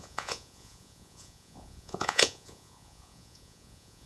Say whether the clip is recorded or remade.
remade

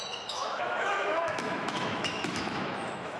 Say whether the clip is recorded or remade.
remade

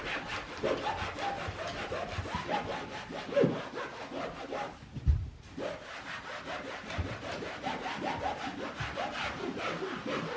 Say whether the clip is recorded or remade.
recorded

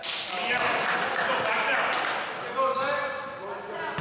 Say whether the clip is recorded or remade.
recorded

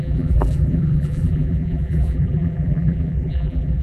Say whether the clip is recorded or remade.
remade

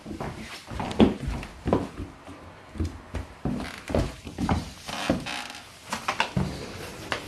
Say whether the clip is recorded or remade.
recorded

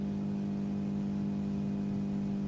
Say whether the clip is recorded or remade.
recorded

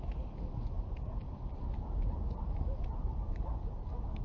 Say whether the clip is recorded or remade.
recorded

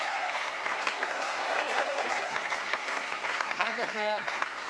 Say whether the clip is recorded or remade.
remade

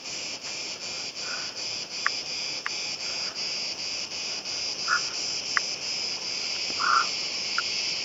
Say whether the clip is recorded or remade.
remade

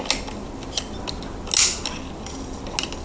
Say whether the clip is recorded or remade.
recorded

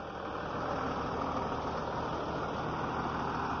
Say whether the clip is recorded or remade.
recorded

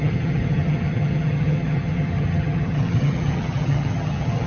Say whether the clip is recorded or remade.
remade